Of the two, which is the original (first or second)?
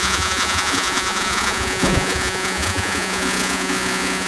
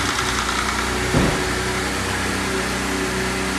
second